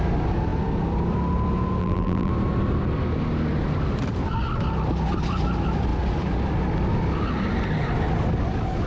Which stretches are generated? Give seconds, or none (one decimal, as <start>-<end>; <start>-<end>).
1.8-2.3